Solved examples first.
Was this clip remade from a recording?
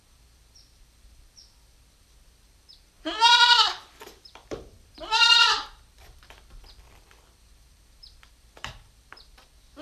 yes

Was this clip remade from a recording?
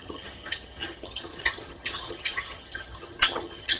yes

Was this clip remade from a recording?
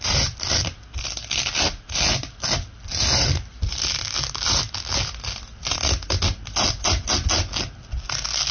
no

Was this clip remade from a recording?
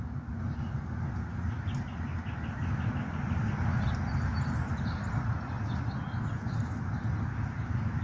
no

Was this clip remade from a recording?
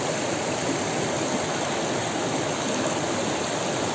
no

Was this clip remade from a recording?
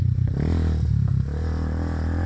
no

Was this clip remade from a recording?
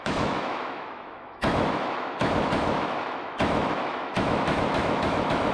yes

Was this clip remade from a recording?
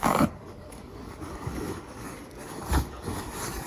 yes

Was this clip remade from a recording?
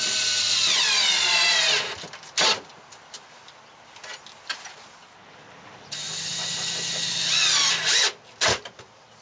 no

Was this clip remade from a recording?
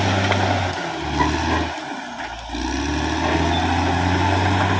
no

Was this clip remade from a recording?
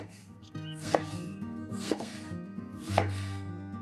yes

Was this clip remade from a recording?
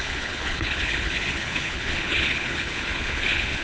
yes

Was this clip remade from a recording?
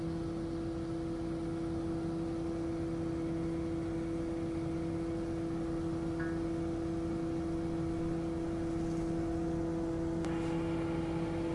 no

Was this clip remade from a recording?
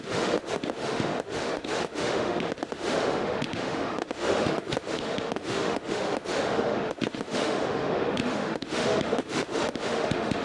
yes